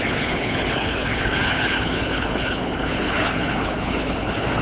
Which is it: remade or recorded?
remade